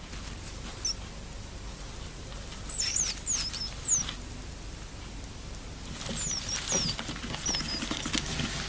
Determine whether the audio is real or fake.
real